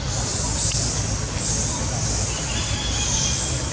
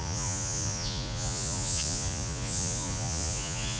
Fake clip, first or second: second